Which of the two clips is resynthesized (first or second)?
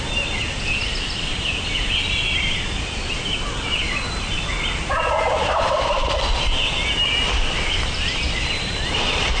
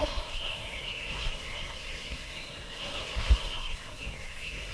second